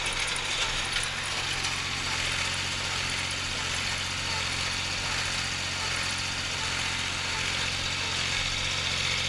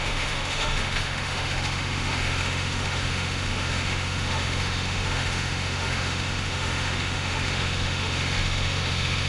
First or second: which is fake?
second